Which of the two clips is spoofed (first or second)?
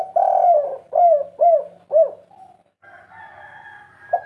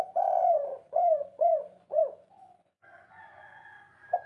second